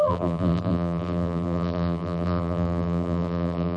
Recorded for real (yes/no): no